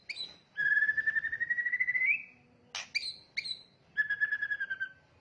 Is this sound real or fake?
real